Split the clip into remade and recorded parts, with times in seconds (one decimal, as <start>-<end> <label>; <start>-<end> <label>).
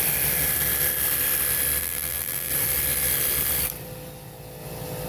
0.0-1.8 recorded; 1.8-2.5 remade; 2.5-5.1 recorded